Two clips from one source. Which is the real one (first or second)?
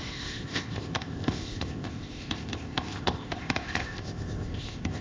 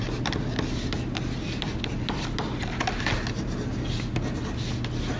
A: second